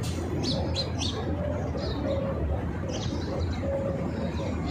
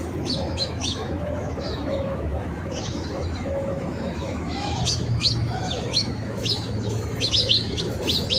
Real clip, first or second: first